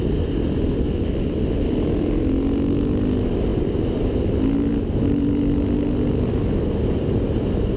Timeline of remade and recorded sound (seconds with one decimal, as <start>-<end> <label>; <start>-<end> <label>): 0.0-7.8 recorded